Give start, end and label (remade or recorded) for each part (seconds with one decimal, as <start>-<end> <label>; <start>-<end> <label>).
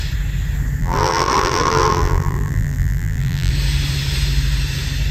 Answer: 0.0-0.8 recorded; 0.8-3.5 remade; 3.5-5.1 recorded